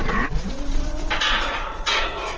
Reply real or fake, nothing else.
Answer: fake